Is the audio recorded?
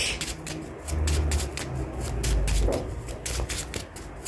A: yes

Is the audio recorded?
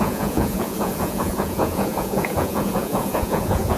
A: no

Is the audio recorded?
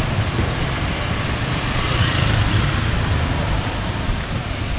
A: yes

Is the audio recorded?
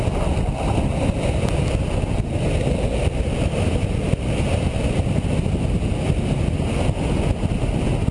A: yes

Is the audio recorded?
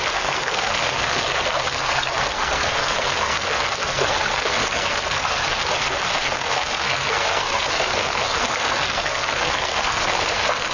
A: no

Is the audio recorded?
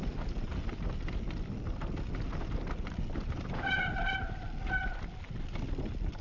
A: yes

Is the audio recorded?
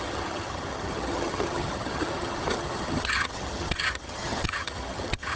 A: no